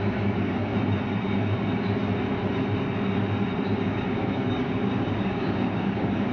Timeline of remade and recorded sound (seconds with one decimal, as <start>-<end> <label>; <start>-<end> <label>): 0.0-0.7 remade; 0.7-3.8 recorded; 3.8-6.3 remade